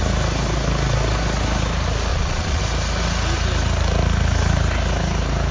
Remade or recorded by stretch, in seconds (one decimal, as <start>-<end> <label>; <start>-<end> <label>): 0.0-2.1 recorded; 2.1-2.6 remade; 2.6-5.5 recorded